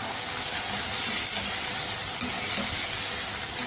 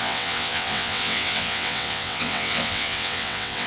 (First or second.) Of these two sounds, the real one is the first